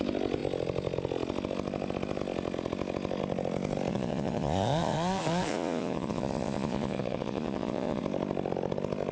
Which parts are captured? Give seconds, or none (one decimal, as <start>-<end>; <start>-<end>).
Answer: 0.0-3.9; 8.0-9.1